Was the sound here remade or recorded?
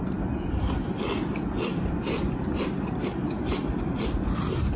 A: recorded